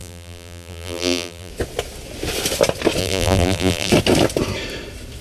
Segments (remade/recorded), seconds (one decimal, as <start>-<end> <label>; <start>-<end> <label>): 0.0-1.5 remade; 1.5-3.0 recorded; 3.0-3.9 remade; 3.9-5.2 recorded